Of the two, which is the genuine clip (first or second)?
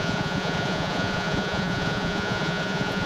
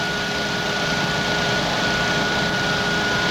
second